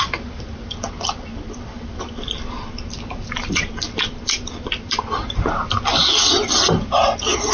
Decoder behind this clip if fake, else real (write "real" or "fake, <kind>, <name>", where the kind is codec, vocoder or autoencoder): real